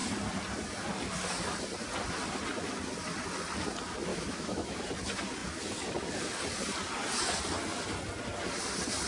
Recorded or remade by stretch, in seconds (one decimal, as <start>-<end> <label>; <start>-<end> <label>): 0.0-4.1 recorded; 4.1-4.8 remade; 4.8-9.1 recorded